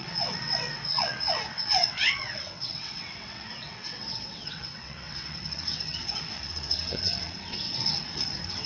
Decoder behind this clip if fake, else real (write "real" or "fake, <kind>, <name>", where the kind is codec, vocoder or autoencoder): fake, vocoder, WaveNeXt